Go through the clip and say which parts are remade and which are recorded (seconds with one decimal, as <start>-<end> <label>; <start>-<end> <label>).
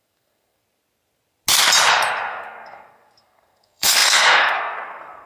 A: 0.0-0.6 remade; 0.6-2.3 recorded; 2.3-5.3 remade